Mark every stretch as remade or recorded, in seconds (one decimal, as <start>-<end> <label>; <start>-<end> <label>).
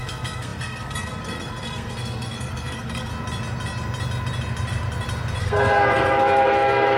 0.0-3.1 remade; 3.1-5.4 recorded; 5.4-7.0 remade